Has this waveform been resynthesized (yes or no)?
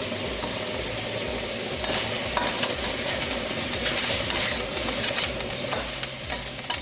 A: no